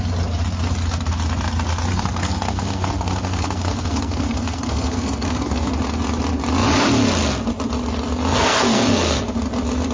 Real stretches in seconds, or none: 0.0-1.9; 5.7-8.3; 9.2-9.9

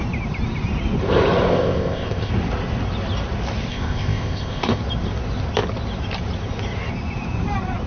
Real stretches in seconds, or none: 0.0-1.5; 2.3-3.7; 4.8-7.9

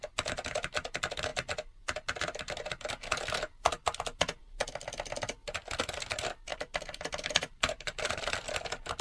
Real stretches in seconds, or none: 0.0-6.5; 8.2-9.0

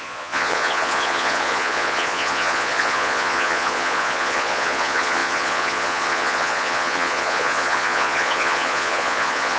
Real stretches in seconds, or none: none

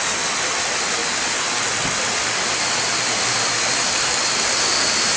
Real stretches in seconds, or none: 0.0-5.2